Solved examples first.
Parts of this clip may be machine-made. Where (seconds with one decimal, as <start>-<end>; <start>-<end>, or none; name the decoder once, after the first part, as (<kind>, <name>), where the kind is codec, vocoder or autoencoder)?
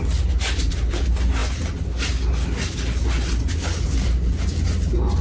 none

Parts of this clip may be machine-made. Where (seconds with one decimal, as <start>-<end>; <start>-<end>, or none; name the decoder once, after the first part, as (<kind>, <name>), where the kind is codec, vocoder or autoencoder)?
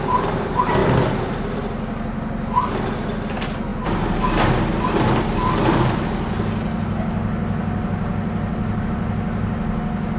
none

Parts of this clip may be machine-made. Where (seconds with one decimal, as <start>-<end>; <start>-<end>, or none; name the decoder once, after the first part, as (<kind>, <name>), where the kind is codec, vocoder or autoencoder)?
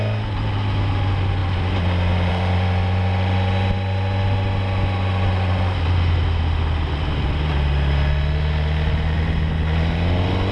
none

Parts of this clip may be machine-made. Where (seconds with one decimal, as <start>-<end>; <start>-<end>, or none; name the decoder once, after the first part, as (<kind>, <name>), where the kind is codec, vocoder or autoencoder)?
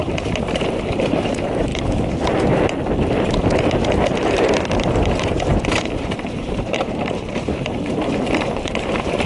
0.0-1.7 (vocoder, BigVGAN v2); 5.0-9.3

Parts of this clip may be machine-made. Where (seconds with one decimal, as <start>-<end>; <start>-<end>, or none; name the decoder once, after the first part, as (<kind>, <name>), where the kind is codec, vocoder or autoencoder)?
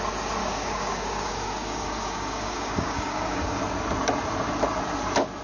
0.4-3.6 (codec, DAC)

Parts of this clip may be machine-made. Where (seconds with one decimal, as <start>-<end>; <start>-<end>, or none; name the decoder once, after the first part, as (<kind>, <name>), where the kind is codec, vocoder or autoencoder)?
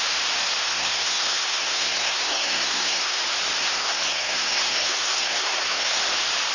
0.7-3.2 (codec, SNAC); 3.6-6.0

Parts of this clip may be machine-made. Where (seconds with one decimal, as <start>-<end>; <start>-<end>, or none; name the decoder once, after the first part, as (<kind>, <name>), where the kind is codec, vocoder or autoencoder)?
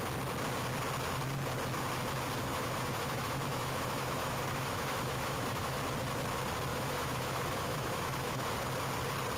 2.5-5.8 (autoencoder, DAC-VAE); 6.7-8.5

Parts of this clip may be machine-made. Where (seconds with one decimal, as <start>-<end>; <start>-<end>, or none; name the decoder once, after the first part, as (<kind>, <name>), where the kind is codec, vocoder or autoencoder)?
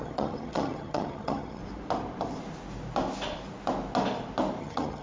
0.0-1.6 (vocoder, HiFi-GAN); 4.6-5.0